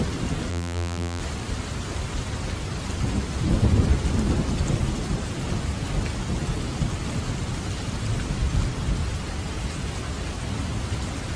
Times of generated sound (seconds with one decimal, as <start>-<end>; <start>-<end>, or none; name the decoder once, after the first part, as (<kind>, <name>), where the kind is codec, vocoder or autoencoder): 0.5-1.2 (vocoder, BigVGAN v2)